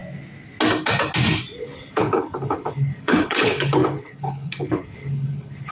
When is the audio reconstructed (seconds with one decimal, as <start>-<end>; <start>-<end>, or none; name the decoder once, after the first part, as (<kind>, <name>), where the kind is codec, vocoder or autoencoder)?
1.6-5.7 (codec, HILCodec)